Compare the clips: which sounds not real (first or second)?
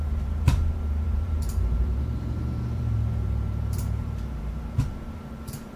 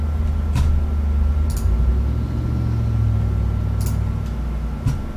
first